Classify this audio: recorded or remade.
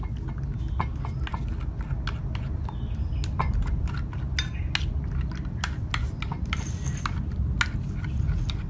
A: recorded